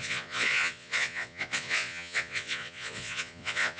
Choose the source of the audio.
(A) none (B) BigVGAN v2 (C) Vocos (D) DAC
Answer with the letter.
C